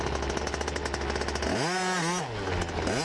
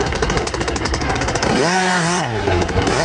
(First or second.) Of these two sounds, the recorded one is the first